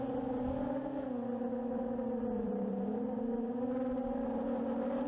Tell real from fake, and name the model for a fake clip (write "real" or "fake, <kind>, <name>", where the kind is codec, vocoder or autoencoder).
real